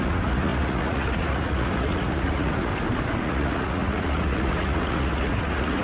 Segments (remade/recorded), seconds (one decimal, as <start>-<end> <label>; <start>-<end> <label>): 0.0-2.7 remade; 2.7-3.2 recorded; 3.2-5.8 remade